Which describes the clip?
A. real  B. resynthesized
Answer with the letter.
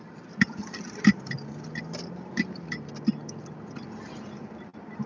A